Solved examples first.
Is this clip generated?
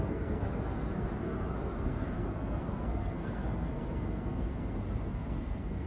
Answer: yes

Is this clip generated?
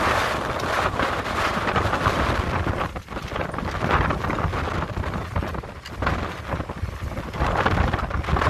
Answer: no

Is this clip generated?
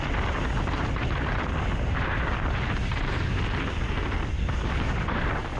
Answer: no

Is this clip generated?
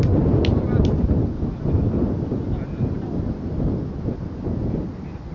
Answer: no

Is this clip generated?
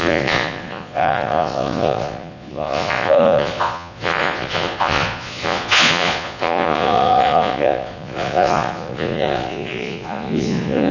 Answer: yes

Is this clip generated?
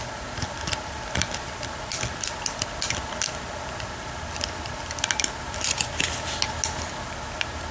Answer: no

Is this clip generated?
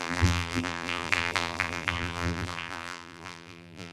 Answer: yes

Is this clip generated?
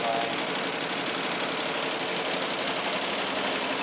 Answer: no